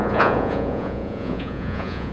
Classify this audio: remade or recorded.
remade